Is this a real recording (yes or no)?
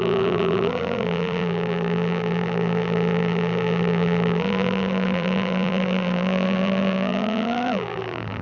no